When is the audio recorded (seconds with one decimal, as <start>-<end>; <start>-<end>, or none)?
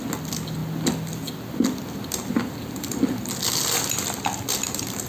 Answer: 0.0-5.1